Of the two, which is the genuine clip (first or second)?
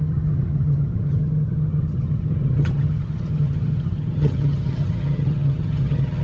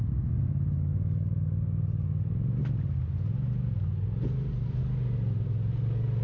second